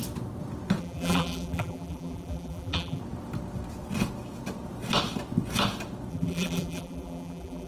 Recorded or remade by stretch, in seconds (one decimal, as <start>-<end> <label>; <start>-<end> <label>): 0.0-0.8 recorded; 0.8-3.0 remade; 3.0-6.1 recorded; 6.1-7.7 remade